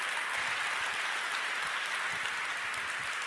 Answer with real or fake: real